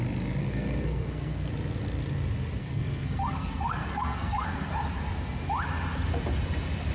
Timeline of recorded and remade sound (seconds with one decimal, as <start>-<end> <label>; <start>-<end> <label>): 0.0-0.4 recorded; 0.4-1.5 remade; 1.5-2.6 recorded; 2.6-4.7 remade; 4.7-6.9 recorded